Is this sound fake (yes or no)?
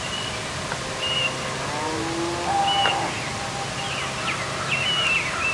no